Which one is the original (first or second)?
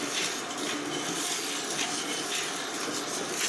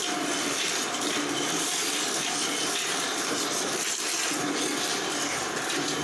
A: first